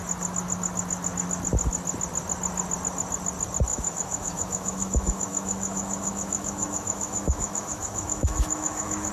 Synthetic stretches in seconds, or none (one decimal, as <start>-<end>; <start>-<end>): 3.7-9.1